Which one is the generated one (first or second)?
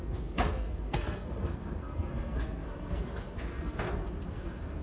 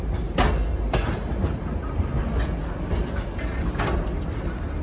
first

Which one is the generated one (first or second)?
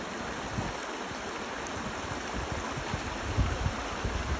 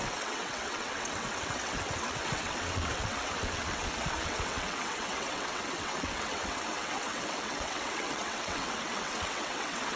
second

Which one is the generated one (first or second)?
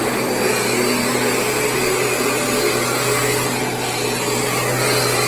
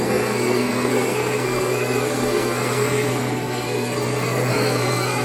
second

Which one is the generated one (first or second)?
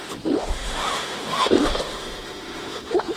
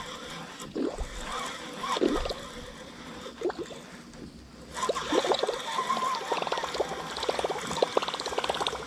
first